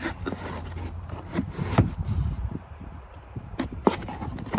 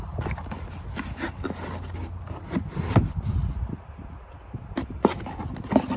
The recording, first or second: second